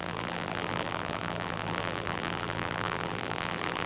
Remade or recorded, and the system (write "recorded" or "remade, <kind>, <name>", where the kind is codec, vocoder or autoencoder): remade, vocoder, BigVGAN v2